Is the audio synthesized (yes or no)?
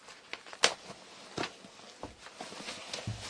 no